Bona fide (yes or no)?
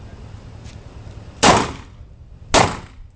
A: yes